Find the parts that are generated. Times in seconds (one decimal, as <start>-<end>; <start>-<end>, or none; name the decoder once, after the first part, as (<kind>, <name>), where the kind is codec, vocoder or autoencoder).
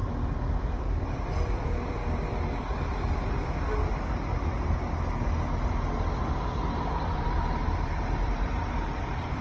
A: 0.0-2.0 (vocoder, BigVGAN v2); 6.3-9.4